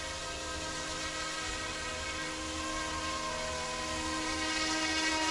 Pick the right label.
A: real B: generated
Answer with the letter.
A